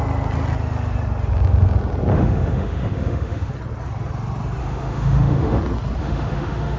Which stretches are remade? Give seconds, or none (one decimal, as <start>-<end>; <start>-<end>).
2.1-3.5; 4.6-5.6; 6.0-6.8